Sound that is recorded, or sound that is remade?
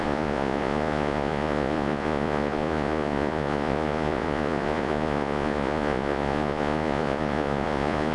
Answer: remade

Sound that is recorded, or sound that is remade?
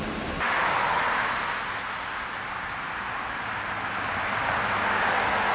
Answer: recorded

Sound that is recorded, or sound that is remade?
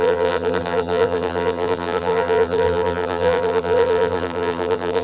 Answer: remade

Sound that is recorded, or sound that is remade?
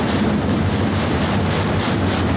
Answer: recorded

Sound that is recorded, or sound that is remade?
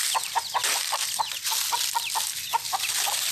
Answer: recorded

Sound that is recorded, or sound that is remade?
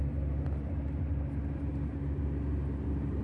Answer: recorded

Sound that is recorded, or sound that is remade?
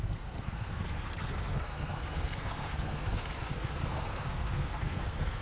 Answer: remade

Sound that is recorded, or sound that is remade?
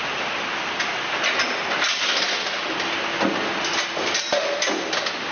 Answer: recorded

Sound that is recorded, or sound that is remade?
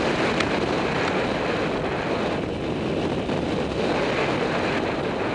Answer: recorded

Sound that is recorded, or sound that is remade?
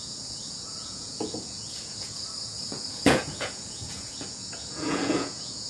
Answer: remade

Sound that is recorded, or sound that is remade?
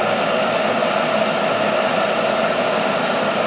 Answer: recorded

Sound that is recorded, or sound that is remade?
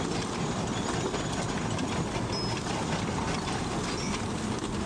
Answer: recorded